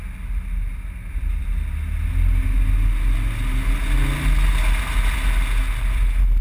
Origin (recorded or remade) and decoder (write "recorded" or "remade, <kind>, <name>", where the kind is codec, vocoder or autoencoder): recorded